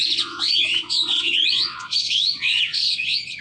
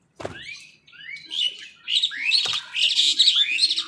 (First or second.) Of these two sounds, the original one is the second